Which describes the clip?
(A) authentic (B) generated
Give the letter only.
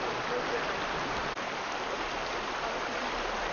A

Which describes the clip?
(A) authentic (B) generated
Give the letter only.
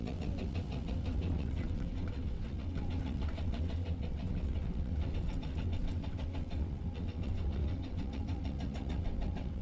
B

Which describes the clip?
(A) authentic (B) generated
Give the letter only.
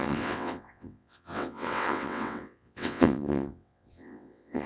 B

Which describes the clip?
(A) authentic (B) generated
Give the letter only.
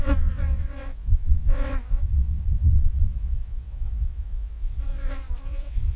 B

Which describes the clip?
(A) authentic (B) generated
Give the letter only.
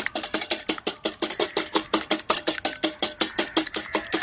A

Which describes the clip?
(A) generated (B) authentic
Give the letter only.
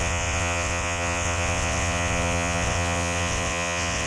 A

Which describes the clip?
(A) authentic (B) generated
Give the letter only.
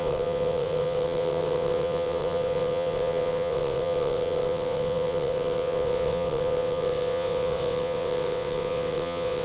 B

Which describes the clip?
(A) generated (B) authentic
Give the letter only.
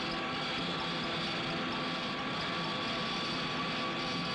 B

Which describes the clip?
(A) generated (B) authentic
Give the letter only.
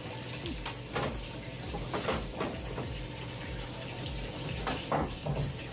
B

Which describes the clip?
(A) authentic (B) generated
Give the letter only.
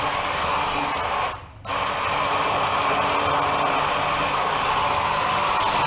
A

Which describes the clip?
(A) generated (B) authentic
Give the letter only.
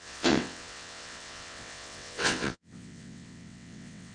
A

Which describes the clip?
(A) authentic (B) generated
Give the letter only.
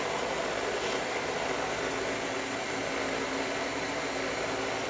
A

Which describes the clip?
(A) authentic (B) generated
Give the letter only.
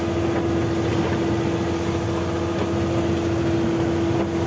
A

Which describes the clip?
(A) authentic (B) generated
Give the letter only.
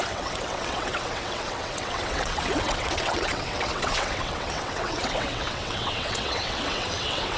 B